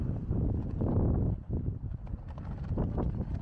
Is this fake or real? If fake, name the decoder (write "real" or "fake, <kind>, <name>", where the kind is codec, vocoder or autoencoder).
real